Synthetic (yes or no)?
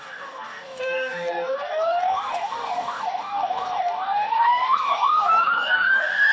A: yes